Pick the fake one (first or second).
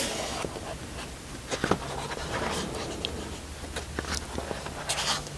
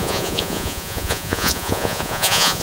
second